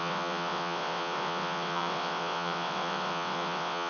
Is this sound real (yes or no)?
no